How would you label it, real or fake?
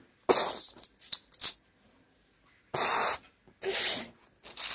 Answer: real